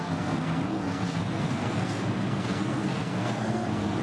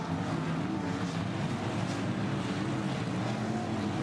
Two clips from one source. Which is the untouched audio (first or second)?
second